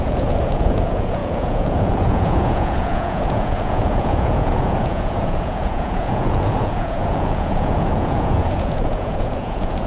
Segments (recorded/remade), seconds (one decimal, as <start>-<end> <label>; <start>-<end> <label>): 0.0-9.9 remade